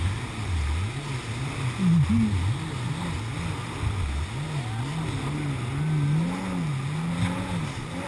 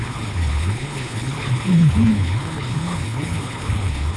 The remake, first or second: second